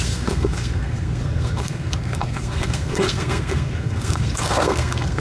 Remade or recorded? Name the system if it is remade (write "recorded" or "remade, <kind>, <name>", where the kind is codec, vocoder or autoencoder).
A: remade, codec, SNAC